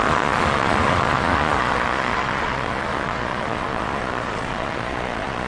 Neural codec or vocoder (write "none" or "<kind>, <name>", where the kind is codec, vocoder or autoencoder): vocoder, Vocos